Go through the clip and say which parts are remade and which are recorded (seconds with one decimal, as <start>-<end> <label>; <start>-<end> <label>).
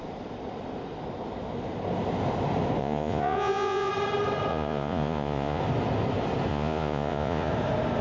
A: 0.0-2.8 recorded; 2.8-3.9 remade; 3.9-4.5 recorded; 4.5-5.6 remade; 5.6-6.5 recorded; 6.5-7.5 remade; 7.5-8.0 recorded